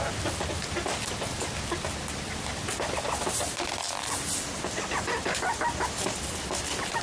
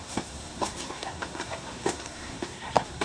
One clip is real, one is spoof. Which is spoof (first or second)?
second